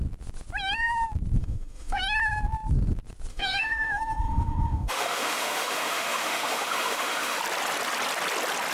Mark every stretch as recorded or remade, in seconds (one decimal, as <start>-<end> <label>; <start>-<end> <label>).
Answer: 0.0-1.4 recorded; 1.4-2.0 remade; 2.0-3.3 recorded; 3.3-7.4 remade; 7.4-8.7 recorded